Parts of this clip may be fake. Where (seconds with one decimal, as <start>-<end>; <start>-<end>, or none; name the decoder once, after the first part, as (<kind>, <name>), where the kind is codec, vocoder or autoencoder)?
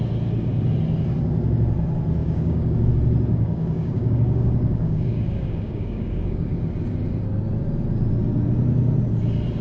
2.2-2.9 (codec, DAC); 3.3-6.5